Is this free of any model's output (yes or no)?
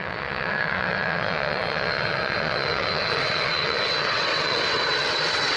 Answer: no